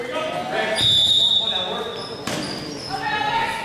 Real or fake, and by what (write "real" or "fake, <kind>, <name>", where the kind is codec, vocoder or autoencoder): real